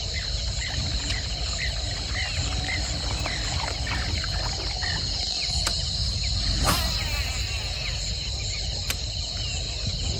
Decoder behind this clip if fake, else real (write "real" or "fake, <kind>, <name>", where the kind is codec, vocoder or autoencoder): real